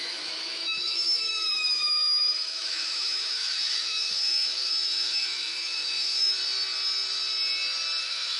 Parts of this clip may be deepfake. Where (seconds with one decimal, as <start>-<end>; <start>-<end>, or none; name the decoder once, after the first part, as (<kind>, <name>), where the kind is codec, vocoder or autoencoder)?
0.0-6.3 (autoencoder, DAC-VAE); 8.0-8.4